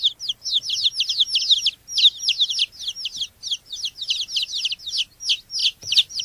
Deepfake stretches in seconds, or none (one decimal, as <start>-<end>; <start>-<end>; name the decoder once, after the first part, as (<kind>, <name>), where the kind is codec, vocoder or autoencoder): 5.6-6.2 (vocoder, BigVGAN v2)